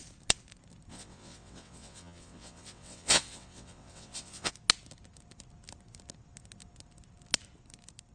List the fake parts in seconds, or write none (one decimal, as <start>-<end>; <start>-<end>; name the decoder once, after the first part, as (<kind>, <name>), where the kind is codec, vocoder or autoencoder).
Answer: 0.9-4.5 (vocoder, WaveNeXt)